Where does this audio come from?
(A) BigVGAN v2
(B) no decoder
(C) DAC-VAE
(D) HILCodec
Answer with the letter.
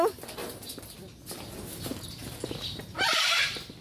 B